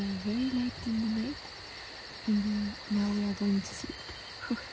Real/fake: real